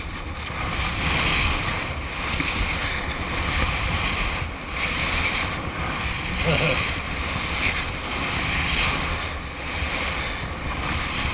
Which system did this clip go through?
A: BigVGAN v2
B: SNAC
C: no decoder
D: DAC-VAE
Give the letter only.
C